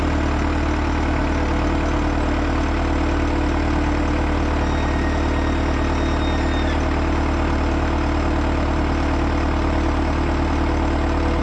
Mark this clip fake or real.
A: real